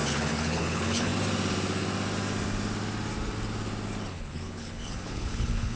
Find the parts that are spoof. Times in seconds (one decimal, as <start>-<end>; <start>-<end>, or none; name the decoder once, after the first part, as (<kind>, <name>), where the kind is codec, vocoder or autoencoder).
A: 0.0-1.1 (codec, HILCodec); 4.1-5.8